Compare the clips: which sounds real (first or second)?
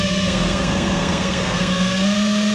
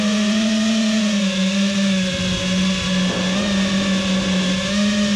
second